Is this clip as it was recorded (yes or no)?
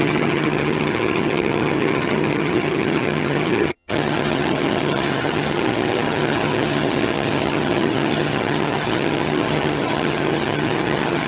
no